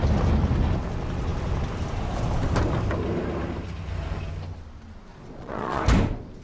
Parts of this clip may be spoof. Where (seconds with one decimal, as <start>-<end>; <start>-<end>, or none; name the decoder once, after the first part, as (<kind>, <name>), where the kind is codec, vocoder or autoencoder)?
5.1-5.8 (vocoder, Vocos)